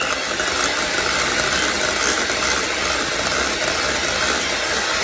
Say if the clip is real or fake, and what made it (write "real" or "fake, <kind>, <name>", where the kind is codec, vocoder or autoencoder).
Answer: real